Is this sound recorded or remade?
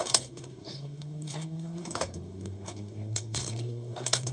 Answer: remade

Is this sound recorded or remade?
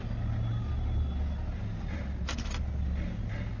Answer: recorded